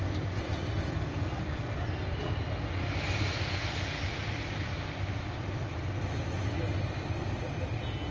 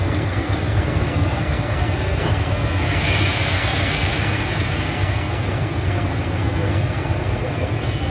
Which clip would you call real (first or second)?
first